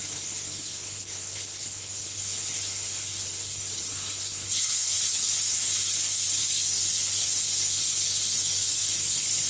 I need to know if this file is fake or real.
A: fake